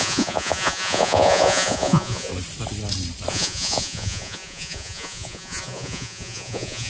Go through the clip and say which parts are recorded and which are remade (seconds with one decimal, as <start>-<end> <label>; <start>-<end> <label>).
0.0-2.3 remade; 2.3-3.3 recorded; 3.3-6.9 remade